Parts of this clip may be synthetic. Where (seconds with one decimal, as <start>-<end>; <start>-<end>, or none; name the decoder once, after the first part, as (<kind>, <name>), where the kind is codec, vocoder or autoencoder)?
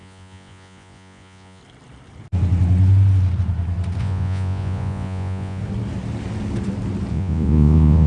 0.0-1.6 (vocoder, Vocos); 4.0-5.6; 7.1-8.1